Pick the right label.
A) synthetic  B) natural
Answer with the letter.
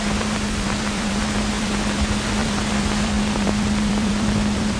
A